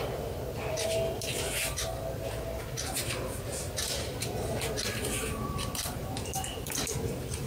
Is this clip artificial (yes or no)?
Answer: yes